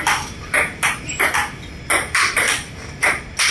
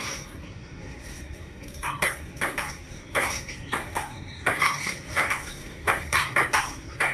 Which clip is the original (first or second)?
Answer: first